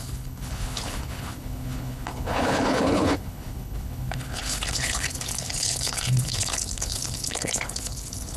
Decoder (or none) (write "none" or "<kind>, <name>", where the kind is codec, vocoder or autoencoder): codec, HILCodec